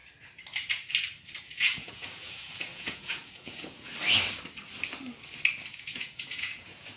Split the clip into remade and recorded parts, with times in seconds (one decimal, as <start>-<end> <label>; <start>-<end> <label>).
0.0-1.4 recorded; 1.4-3.9 remade; 3.9-5.7 recorded; 5.7-7.0 remade